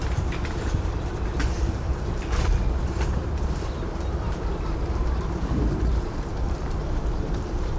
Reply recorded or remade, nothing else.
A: remade